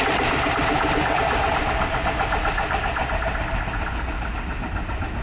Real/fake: real